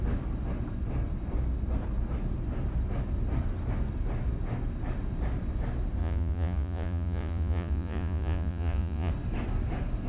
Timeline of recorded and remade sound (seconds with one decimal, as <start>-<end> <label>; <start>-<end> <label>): 0.0-6.0 recorded; 6.0-9.1 remade; 9.1-10.1 recorded